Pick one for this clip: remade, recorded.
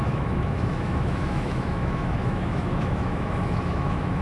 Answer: remade